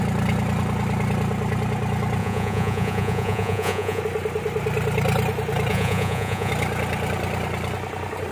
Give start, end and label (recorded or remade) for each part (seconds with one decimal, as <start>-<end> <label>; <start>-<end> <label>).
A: 0.0-2.2 recorded; 2.2-4.0 remade; 4.0-5.7 recorded; 5.7-6.5 remade; 6.5-8.3 recorded